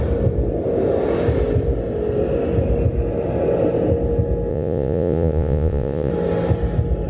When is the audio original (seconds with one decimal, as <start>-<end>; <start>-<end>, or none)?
0.0-4.5; 6.1-7.1